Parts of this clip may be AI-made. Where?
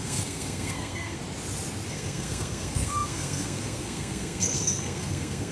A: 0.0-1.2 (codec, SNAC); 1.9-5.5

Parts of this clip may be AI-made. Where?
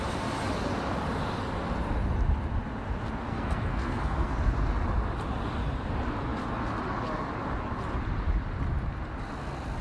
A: 3.3-4.3 (codec, SNAC)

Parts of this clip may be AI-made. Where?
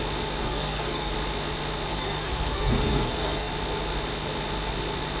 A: 0.4-1.1 (codec, SNAC); 1.9-3.5